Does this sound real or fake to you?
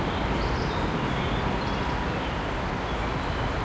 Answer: real